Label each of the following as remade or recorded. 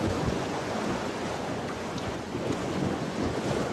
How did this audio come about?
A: remade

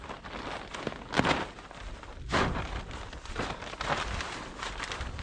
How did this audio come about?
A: recorded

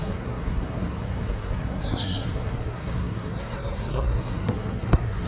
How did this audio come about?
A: remade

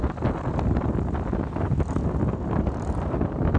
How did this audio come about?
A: recorded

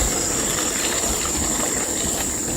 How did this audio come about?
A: recorded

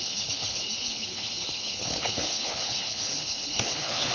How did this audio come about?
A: remade